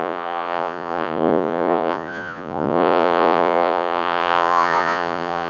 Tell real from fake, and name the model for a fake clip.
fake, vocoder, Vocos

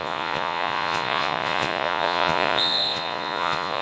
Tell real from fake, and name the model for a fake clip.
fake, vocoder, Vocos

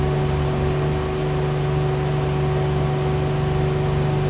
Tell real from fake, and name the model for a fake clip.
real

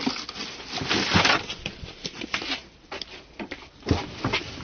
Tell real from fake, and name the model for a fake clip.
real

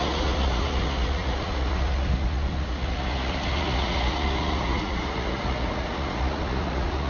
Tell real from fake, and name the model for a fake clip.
fake, vocoder, Vocos